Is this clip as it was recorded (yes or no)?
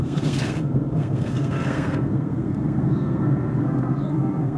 no